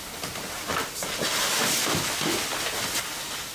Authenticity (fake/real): real